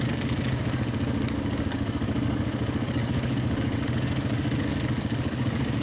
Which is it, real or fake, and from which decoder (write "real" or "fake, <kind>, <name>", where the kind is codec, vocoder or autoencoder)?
fake, codec, DAC